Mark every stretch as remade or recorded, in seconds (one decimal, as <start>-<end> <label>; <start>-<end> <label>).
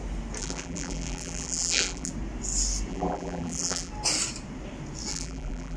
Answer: 0.0-0.4 recorded; 0.4-2.1 remade; 2.1-2.9 recorded; 2.9-3.9 remade; 3.9-5.1 recorded; 5.1-5.8 remade